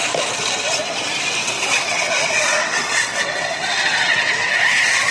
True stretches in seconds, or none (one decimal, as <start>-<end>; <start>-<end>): 0.0-1.4; 4.5-5.1